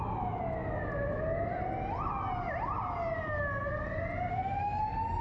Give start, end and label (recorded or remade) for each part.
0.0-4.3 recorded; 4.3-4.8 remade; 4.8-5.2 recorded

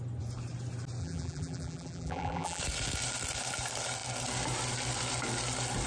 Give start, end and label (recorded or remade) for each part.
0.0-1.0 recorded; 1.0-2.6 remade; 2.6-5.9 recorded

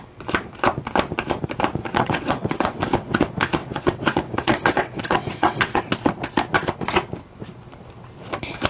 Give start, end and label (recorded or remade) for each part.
0.0-1.8 recorded; 1.8-3.2 remade; 3.2-3.6 recorded; 3.6-5.8 remade; 5.8-8.7 recorded